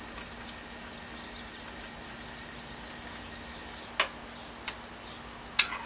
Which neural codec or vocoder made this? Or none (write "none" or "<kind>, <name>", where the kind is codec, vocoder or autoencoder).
none